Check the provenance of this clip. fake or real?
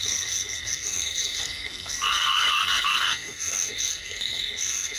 fake